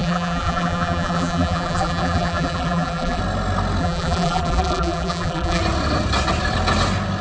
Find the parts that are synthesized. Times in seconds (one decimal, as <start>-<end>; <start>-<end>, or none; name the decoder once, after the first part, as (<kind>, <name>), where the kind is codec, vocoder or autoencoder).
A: 0.0-3.2 (vocoder, BigVGAN v2); 3.8-5.6